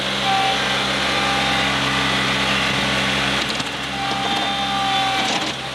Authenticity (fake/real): real